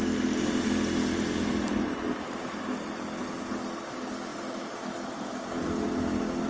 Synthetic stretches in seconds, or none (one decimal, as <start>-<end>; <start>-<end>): none